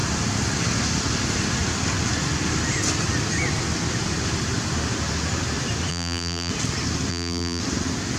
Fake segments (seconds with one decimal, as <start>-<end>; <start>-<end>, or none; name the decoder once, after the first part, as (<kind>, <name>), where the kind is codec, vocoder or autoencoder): 5.9-6.5 (vocoder, BigVGAN v2); 7.1-7.6